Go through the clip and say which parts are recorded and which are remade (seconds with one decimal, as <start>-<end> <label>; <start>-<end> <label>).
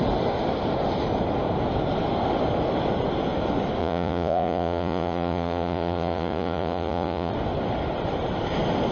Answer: 0.0-3.8 recorded; 3.8-7.3 remade; 7.3-8.9 recorded